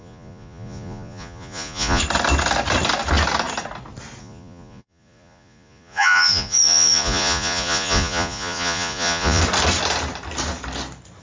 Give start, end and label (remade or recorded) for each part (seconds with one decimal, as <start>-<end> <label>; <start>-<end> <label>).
0.0-2.0 remade; 2.0-4.2 recorded; 4.2-9.4 remade; 9.4-11.2 recorded